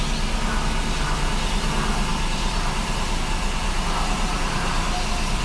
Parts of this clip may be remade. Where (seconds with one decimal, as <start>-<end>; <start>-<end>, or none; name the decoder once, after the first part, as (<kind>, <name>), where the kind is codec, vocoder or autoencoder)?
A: 2.1-5.4 (vocoder, BigVGAN v2)